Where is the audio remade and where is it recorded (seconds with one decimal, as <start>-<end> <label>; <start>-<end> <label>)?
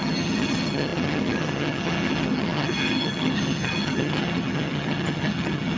0.0-5.8 remade